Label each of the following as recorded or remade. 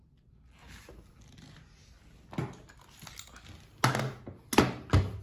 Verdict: recorded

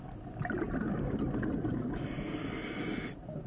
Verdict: recorded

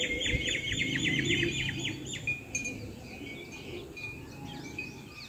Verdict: recorded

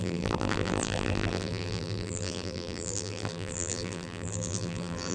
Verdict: remade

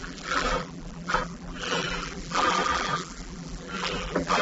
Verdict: remade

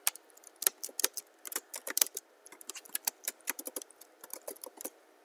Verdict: remade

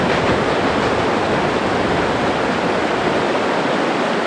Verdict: remade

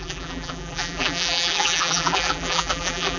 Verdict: remade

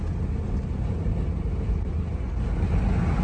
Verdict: recorded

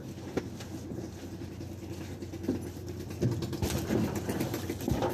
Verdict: recorded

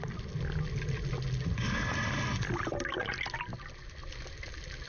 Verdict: recorded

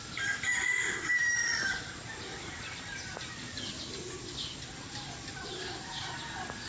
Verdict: remade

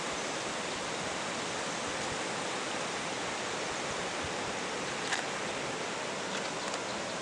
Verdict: remade